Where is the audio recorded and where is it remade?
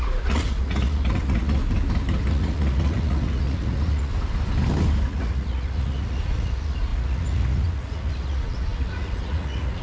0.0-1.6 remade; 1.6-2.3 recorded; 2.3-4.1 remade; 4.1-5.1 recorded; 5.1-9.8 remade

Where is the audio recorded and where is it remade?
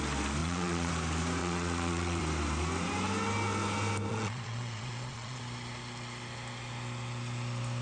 0.0-0.4 recorded; 0.4-0.9 remade; 0.9-1.4 recorded; 1.4-2.2 remade; 2.2-4.1 recorded; 4.1-5.4 remade; 5.4-7.8 recorded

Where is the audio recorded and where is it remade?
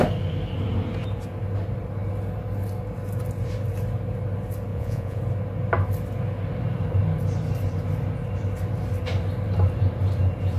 0.0-4.7 recorded; 4.7-5.2 remade; 5.2-10.6 recorded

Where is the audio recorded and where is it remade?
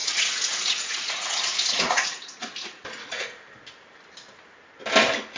0.0-3.2 remade; 3.2-5.4 recorded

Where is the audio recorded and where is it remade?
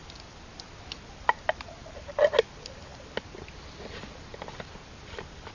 0.0-5.5 recorded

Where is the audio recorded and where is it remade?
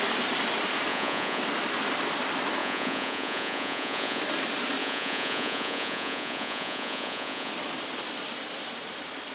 0.0-0.9 recorded; 0.9-1.4 remade; 1.4-2.6 recorded; 2.6-4.2 remade; 4.2-4.8 recorded; 4.8-7.5 remade; 7.5-9.3 recorded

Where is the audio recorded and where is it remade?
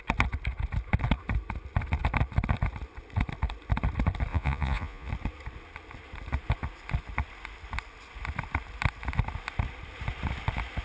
0.0-4.3 recorded; 4.3-5.1 remade; 5.1-10.8 recorded